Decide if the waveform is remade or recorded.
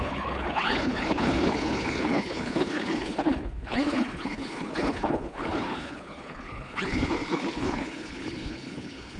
remade